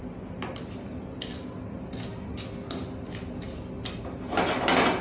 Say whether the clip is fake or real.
real